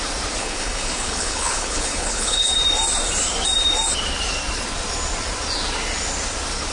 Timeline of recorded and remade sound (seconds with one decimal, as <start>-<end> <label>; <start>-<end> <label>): 0.0-0.4 recorded; 0.4-2.5 remade; 2.5-6.7 recorded